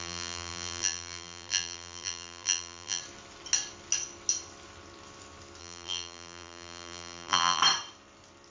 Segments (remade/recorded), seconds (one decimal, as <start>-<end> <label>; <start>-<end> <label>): 0.0-3.0 remade; 3.0-5.6 recorded; 5.6-7.6 remade; 7.6-8.5 recorded